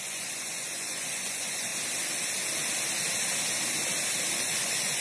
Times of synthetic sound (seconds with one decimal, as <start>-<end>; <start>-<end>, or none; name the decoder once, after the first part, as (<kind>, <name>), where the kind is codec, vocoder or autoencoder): 0.0-1.7 (vocoder, Vocos); 4.3-5.0